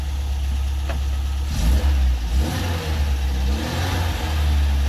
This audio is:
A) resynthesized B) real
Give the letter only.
B